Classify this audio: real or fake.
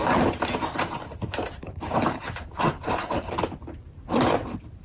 fake